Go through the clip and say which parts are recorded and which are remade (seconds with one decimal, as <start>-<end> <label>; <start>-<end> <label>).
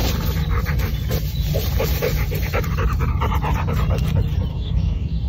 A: 0.0-4.5 recorded; 4.5-5.3 remade